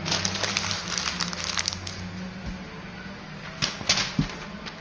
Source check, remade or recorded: recorded